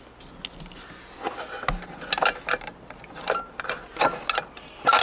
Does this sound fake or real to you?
real